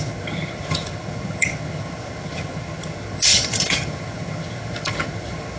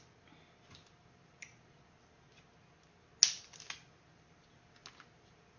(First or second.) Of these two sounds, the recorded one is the second